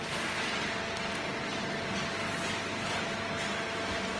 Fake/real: real